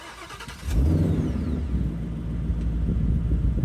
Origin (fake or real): real